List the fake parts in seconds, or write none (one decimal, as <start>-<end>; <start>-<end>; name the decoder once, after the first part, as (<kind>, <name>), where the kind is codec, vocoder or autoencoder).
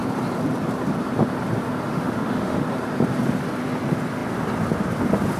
1.9-2.6 (autoencoder, DAC-VAE)